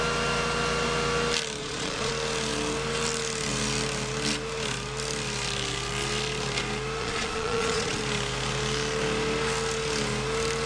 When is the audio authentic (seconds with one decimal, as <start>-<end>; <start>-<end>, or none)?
0.0-1.6; 2.1-7.0; 8.0-10.7